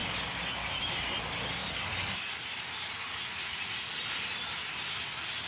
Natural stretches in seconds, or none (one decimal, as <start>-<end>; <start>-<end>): 0.0-5.5